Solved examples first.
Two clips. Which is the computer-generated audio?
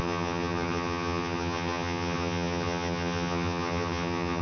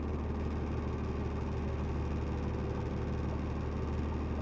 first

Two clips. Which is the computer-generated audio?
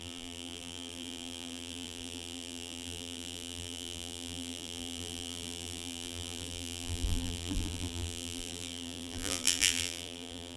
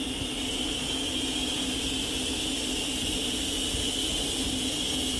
first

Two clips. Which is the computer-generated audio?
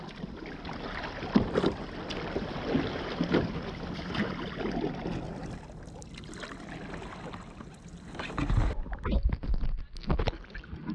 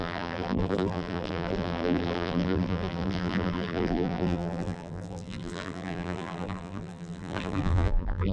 second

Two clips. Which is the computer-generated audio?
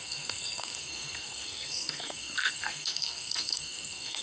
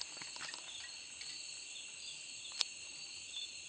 first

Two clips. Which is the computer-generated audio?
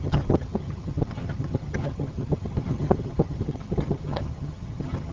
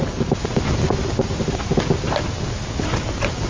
first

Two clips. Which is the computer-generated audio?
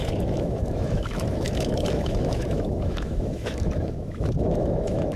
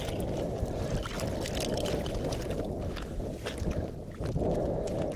first